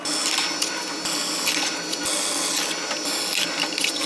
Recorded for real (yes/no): yes